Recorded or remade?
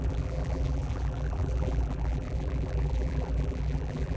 remade